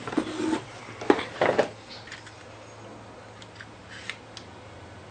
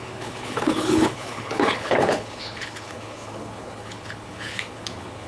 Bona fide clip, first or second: first